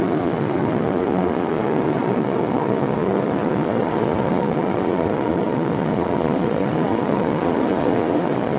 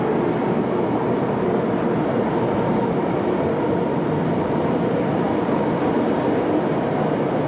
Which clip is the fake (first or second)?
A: first